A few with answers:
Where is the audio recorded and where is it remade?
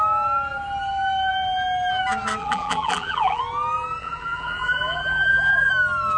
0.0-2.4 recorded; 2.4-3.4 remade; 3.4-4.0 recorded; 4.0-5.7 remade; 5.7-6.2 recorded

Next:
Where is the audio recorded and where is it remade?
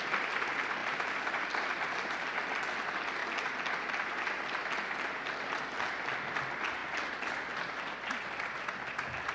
0.0-0.8 recorded; 0.8-2.6 remade; 2.6-6.8 recorded; 6.8-8.1 remade; 8.1-9.3 recorded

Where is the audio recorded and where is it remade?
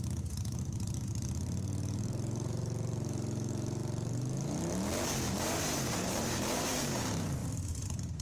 0.0-3.8 remade; 3.8-5.3 recorded; 5.3-8.2 remade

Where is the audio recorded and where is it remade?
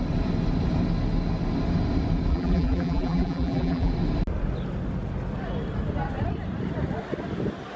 0.0-2.3 recorded; 2.3-3.9 remade; 3.9-7.8 recorded